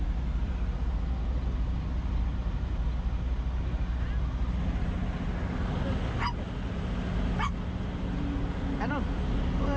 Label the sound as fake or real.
real